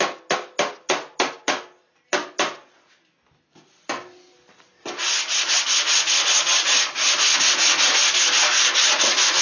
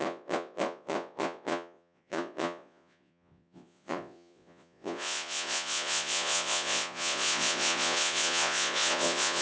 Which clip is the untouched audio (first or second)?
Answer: first